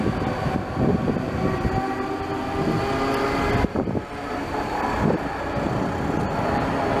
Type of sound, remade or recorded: recorded